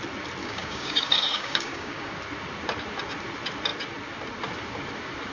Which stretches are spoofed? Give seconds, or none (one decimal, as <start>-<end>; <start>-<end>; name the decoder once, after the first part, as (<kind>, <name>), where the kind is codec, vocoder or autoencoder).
0.4-2.1 (codec, DAC)